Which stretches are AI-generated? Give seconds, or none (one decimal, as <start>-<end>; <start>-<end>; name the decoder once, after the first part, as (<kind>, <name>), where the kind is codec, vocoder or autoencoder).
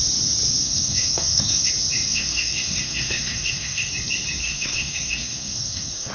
0.6-1.7 (codec, SNAC); 2.1-3.9; 4.4-6.1